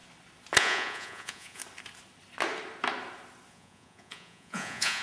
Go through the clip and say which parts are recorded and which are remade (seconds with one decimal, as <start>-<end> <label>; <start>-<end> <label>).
0.0-0.6 recorded; 0.6-1.6 remade; 1.6-3.5 recorded; 3.5-5.0 remade